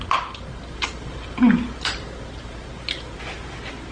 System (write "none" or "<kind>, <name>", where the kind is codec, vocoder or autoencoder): none